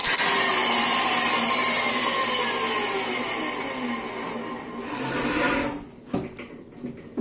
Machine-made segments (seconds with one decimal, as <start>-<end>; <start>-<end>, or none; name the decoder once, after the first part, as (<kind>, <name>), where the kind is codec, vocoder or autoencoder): none